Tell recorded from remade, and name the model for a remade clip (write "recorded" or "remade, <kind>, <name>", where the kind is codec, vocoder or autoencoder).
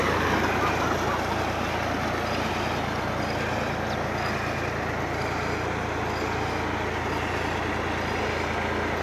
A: recorded